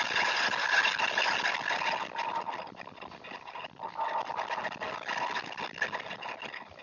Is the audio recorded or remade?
recorded